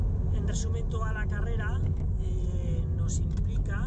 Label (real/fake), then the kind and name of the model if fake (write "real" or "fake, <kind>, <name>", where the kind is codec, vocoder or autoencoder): real